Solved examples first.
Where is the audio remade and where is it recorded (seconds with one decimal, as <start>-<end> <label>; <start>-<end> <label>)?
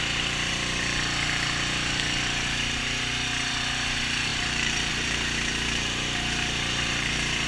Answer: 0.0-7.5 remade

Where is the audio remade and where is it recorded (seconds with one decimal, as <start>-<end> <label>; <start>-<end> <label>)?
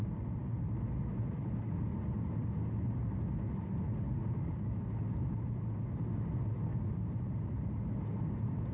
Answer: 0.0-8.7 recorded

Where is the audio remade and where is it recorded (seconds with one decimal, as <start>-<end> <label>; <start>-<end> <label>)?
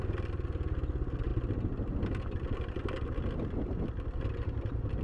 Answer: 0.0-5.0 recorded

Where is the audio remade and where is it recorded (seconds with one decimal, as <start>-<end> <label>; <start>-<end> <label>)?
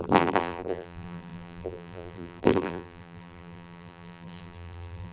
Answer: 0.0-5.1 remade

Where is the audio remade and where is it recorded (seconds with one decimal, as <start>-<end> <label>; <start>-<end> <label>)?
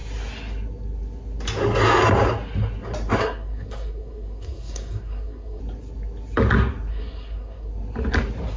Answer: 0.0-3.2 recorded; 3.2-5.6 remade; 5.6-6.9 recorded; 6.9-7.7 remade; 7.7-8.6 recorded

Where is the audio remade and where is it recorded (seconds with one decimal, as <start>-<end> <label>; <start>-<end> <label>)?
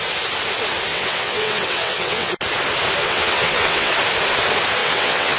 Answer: 0.0-0.9 recorded; 0.9-2.3 remade; 2.3-3.0 recorded; 3.0-3.9 remade; 3.9-4.8 recorded; 4.8-5.4 remade